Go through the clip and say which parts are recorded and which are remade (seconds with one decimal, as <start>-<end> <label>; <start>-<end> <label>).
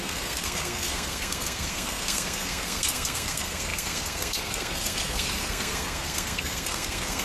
0.0-7.2 remade